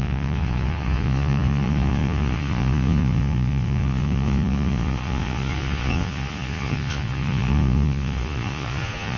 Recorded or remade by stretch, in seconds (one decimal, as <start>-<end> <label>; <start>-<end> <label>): 0.0-9.2 remade